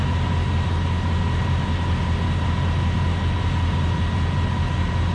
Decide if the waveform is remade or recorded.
recorded